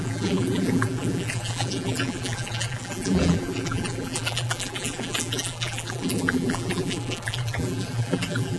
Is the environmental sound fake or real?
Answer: fake